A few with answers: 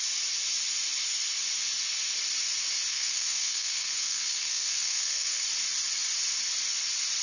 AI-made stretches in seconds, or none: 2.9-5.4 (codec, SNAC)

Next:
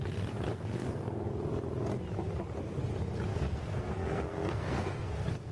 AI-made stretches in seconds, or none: 0.5-1.3 (codec, SNAC); 3.3-5.5

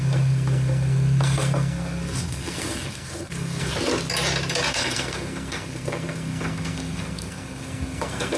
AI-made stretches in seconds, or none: 0.0-3.7 (codec, SNAC); 4.7-8.4

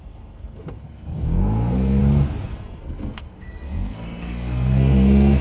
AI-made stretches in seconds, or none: 0.0-2.0 (codec, SNAC); 2.5-5.4